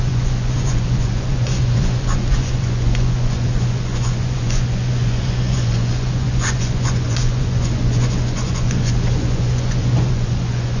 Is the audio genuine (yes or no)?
no